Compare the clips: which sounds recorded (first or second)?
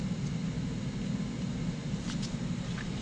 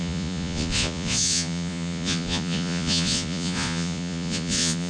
first